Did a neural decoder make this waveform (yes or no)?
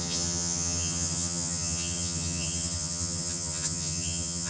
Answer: yes